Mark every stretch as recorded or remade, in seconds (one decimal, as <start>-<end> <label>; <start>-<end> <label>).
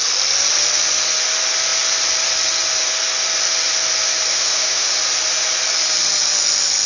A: 0.0-4.3 recorded; 4.3-4.9 remade; 4.9-6.9 recorded